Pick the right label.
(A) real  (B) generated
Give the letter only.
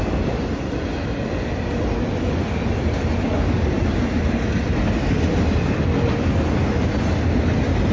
A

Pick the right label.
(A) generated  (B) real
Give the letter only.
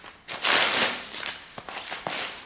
B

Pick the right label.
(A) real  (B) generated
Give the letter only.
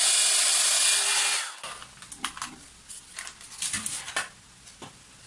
A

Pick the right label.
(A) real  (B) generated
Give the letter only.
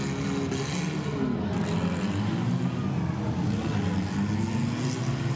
A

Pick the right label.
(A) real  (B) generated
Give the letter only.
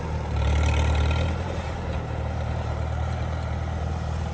B